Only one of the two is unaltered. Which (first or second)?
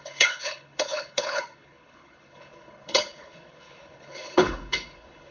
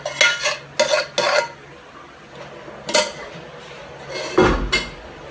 second